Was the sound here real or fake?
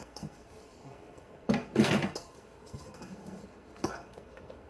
fake